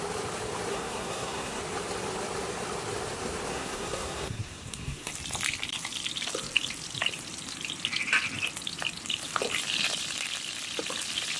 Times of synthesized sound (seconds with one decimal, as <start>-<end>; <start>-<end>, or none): 0.7-1.6; 3.5-5.1